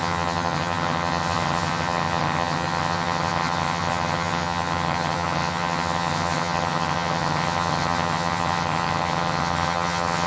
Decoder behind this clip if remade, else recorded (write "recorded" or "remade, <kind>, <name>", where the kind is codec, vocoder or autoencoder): remade, vocoder, HiFi-GAN